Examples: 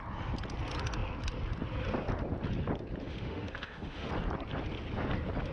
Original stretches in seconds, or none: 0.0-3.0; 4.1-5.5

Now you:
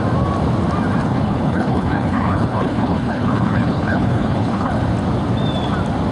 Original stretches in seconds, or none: 0.0-1.0; 4.7-6.1

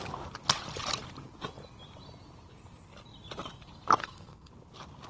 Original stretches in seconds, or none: 0.0-4.0; 4.5-5.1

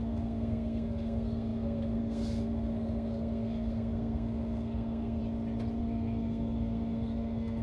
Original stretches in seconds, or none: 5.2-5.8

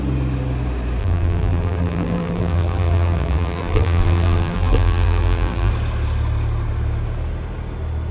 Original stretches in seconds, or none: 0.0-1.0; 5.7-8.1

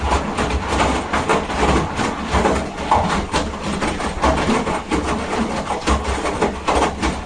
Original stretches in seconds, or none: 0.0-7.3

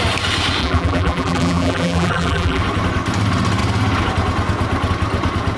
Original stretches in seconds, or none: 0.0-0.6; 2.6-5.6

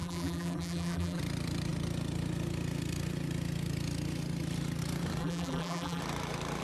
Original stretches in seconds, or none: 1.2-5.2; 6.0-6.6